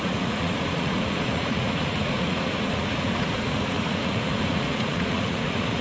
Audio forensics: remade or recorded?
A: remade